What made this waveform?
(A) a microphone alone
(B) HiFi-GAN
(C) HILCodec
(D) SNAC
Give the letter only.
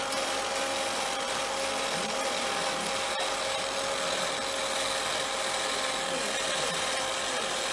A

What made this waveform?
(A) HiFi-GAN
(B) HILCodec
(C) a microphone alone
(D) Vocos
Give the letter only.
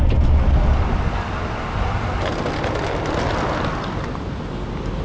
C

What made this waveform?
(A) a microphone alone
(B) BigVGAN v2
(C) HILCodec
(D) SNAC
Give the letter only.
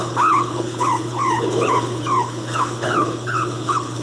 C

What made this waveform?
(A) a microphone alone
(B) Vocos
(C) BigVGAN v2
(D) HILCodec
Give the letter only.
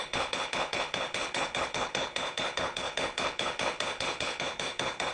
D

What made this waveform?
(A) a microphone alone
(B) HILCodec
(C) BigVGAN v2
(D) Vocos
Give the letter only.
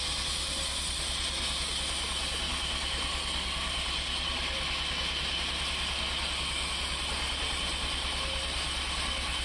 A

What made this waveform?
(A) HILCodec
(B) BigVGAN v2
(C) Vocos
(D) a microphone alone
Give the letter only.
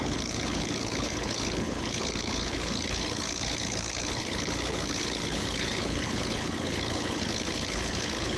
A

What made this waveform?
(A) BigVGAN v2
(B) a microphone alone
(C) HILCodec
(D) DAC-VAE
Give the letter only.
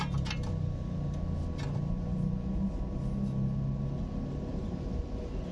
B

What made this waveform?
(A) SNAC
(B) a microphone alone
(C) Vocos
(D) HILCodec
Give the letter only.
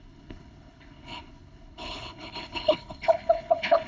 D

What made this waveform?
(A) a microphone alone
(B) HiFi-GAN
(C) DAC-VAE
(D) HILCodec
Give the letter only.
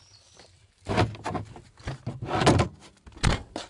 A